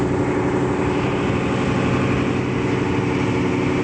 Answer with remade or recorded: recorded